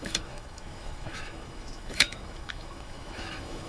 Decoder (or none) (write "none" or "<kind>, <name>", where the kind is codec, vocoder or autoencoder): autoencoder, DAC-VAE